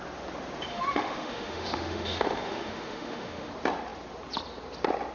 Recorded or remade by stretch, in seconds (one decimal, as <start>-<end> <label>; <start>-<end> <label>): 0.0-0.7 recorded; 0.7-3.5 remade; 3.5-5.1 recorded